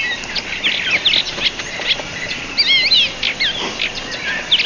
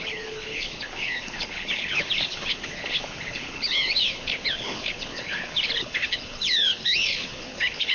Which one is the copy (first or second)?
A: second